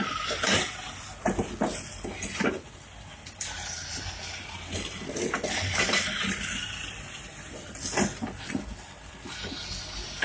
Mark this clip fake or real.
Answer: real